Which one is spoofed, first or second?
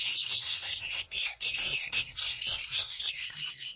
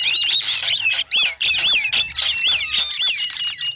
first